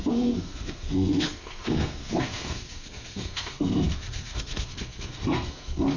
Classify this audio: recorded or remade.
remade